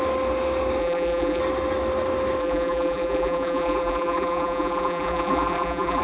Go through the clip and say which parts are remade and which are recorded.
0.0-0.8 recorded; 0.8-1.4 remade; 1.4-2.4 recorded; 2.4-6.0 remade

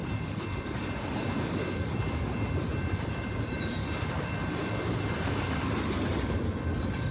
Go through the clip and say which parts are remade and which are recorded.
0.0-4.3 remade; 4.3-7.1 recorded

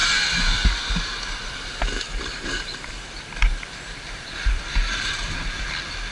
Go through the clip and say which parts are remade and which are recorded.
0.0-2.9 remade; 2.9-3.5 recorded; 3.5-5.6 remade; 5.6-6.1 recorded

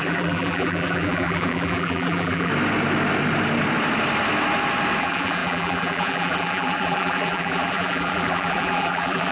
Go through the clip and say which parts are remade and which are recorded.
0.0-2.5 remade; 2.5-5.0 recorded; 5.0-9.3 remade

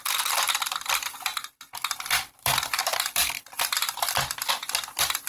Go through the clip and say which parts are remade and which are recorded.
0.0-5.3 remade